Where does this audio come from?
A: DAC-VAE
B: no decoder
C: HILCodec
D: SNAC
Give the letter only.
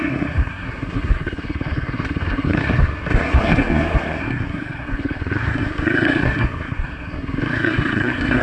D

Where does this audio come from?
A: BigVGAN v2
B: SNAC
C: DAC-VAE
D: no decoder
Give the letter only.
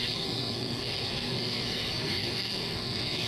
B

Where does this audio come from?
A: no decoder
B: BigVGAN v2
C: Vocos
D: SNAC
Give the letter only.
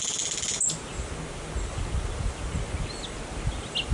A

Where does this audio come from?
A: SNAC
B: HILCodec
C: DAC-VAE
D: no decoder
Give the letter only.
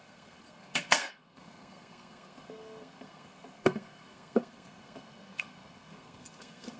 A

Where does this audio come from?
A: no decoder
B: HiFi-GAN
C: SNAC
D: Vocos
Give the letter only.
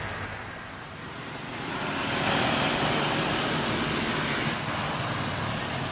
A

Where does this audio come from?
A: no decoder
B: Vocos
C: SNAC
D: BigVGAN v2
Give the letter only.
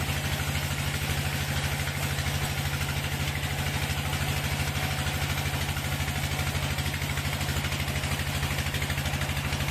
A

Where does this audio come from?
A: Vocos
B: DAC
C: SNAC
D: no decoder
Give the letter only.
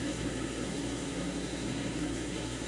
C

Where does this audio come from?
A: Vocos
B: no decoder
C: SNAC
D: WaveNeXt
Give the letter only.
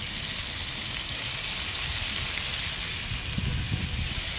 B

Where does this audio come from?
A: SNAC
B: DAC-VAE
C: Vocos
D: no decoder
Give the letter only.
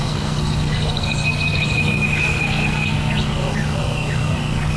A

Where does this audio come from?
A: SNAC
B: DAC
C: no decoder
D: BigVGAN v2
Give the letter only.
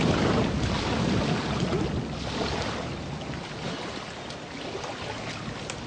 C